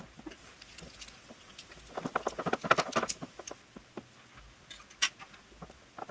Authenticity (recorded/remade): recorded